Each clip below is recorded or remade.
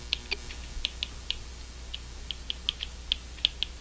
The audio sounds recorded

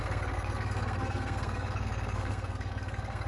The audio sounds remade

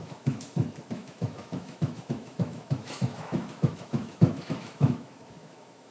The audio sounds remade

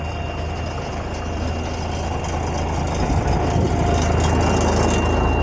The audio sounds recorded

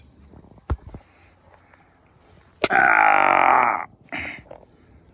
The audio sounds recorded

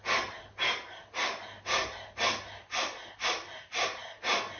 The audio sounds recorded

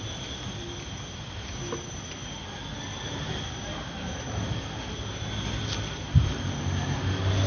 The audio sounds recorded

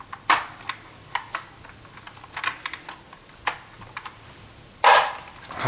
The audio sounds recorded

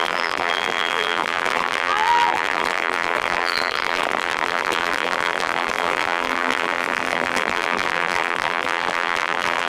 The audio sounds remade